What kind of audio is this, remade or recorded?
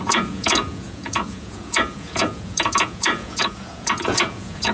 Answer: remade